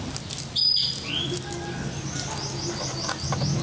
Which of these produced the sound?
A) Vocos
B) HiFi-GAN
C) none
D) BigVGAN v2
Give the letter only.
C